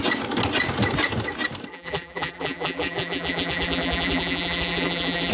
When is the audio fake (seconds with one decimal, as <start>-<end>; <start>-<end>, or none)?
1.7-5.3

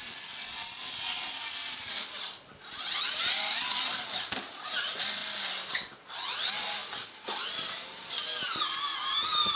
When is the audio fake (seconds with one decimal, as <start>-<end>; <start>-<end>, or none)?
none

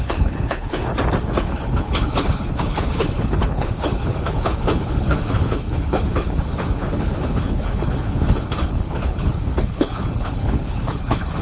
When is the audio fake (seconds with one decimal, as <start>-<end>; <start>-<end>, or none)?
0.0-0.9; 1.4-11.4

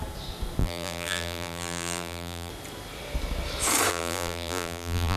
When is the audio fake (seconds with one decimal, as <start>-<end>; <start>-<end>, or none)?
0.6-2.5; 3.9-5.2

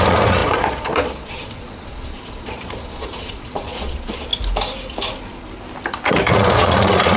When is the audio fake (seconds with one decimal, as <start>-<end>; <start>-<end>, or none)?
0.0-4.3; 6.1-7.2

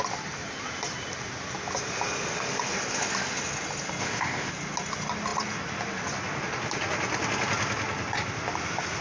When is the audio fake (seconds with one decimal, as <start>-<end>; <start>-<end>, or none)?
4.0-4.5

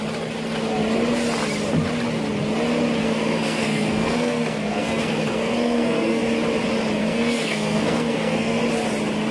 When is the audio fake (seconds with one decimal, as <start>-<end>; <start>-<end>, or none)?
3.0-6.2; 7.0-8.6